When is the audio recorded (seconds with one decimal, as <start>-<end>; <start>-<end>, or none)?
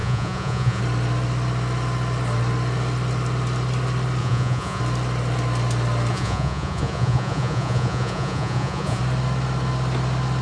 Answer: 0.8-4.2; 4.8-6.1; 9.0-10.4